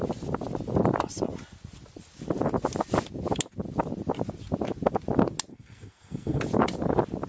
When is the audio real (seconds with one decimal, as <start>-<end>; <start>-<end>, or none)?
0.0-5.5; 6.4-7.3